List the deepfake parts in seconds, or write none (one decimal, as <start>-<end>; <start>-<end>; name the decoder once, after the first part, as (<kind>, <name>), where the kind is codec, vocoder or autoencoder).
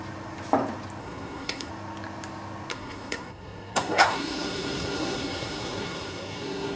1.0-1.7 (codec, SNAC); 2.7-6.8